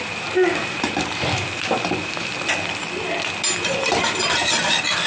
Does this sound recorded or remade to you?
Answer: recorded